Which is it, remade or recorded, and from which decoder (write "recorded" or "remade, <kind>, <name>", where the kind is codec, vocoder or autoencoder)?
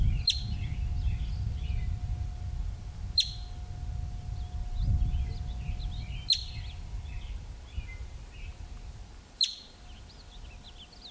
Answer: recorded